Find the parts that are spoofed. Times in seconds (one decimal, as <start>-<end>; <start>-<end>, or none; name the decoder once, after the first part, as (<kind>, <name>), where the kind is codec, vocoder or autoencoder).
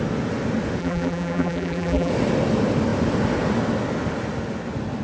0.8-2.1 (vocoder, BigVGAN v2)